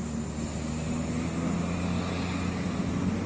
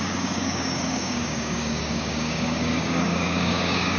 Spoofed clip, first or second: second